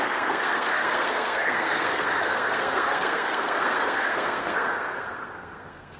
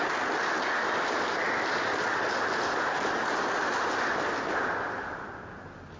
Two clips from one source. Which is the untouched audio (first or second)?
second